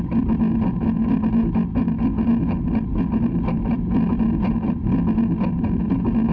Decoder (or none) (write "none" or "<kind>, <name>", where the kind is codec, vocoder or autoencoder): none